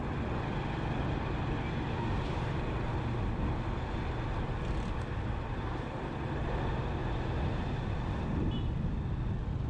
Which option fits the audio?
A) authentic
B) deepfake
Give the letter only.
A